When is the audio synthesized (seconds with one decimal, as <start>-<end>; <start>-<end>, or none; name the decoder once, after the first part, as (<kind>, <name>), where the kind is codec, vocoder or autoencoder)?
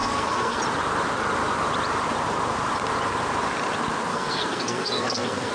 0.0-0.6 (codec, SNAC); 4.1-5.5